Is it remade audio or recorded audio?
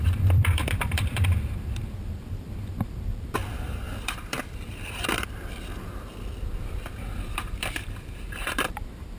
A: remade